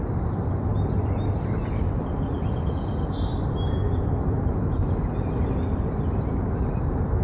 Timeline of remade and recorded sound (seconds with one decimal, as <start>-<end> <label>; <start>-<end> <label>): 0.0-7.2 recorded

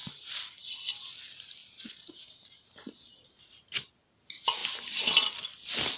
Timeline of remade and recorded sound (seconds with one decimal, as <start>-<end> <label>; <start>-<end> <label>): 0.0-0.6 remade; 0.6-1.6 recorded; 1.6-3.6 remade; 3.6-6.0 recorded